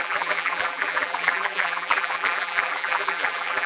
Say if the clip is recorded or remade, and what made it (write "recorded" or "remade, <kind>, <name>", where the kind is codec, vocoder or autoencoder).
remade, vocoder, BigVGAN v2